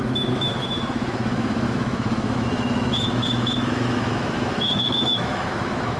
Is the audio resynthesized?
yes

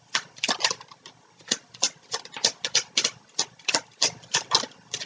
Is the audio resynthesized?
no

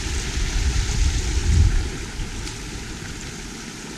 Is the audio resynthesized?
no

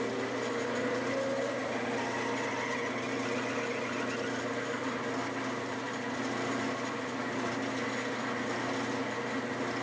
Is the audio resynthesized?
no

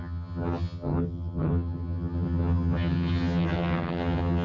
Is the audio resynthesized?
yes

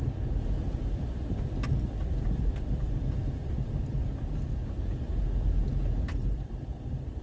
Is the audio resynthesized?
no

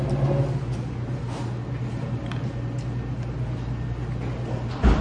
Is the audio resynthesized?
no